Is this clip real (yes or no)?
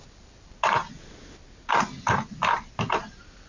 yes